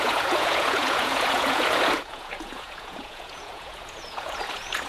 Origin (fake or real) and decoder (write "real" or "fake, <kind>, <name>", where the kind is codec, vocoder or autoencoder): fake, vocoder, Vocos